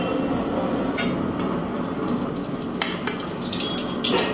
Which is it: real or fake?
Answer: real